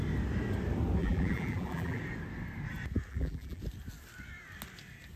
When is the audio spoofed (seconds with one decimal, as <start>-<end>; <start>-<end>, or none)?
1.0-2.0; 3.1-3.6

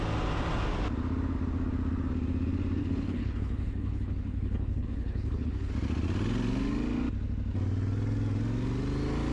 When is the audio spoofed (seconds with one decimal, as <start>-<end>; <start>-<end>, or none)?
2.8-5.7

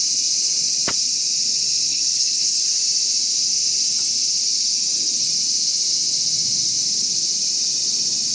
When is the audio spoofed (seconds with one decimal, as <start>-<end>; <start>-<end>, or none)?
1.9-2.6

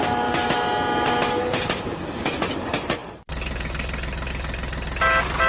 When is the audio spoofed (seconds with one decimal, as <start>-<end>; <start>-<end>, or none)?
none

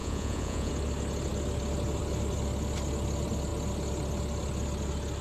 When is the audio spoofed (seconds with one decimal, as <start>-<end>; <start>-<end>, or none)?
0.0-0.7